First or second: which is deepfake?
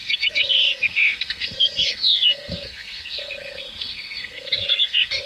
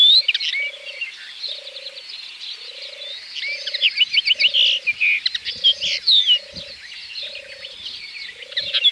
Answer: first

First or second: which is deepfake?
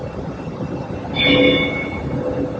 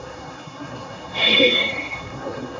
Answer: second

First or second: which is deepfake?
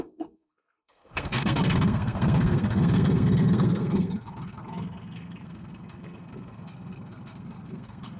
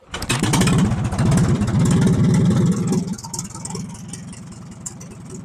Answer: first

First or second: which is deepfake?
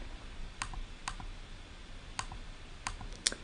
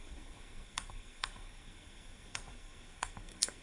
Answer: second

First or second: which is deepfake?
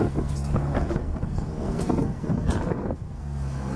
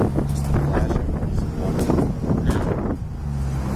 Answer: first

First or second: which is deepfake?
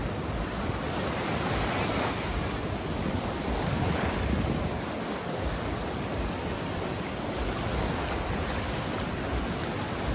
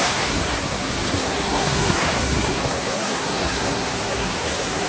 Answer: second